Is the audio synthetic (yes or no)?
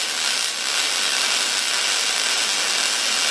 no